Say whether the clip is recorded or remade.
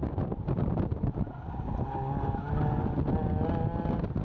recorded